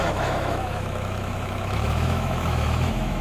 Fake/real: fake